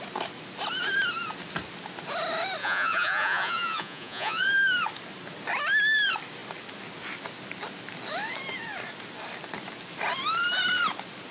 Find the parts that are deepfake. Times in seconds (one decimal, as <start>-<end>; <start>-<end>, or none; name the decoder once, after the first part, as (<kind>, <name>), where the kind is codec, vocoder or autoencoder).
2.6-4.5 (vocoder, Vocos)